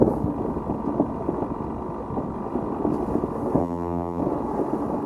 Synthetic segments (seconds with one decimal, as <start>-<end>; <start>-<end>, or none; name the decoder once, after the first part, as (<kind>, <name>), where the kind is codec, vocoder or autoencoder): 3.6-4.2 (vocoder, BigVGAN v2)